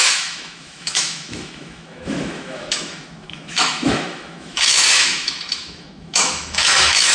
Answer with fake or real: fake